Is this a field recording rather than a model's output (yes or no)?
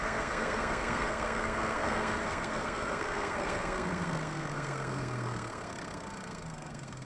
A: no